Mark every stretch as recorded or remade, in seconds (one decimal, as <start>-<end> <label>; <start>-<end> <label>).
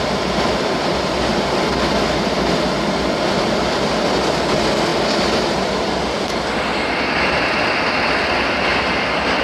0.0-4.9 recorded; 4.9-7.1 remade; 7.1-9.4 recorded